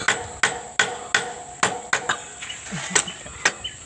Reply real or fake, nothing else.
real